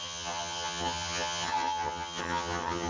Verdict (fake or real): fake